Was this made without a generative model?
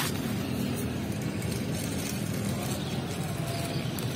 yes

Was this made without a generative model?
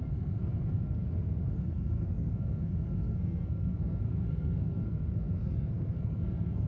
no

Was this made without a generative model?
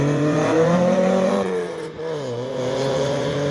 no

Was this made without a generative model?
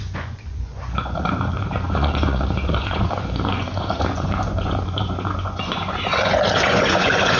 no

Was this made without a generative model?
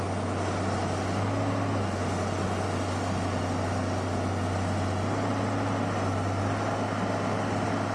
yes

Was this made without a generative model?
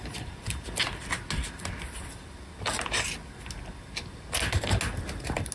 yes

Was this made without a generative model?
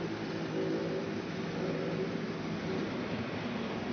yes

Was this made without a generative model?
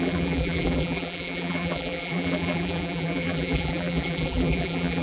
no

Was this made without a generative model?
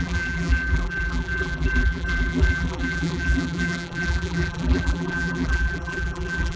no